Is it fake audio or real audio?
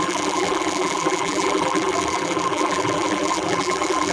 fake